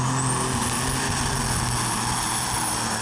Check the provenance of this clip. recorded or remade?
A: recorded